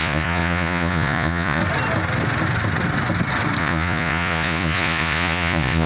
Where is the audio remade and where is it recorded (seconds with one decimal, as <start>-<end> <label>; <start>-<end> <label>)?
0.0-1.6 remade; 1.6-3.6 recorded; 3.6-5.9 remade